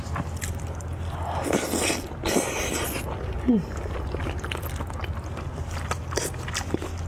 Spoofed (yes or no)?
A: no